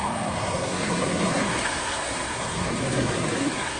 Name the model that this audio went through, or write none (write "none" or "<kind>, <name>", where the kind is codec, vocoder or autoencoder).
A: codec, SNAC